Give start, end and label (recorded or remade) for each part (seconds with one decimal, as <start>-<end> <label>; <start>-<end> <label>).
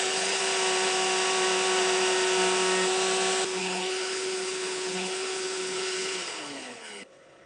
0.0-0.4 remade; 0.4-3.6 recorded; 3.6-7.5 remade